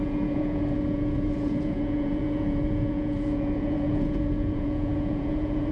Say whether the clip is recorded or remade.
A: remade